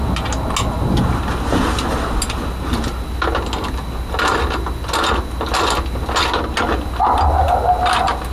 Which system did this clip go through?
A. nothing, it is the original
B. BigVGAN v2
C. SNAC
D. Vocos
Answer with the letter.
A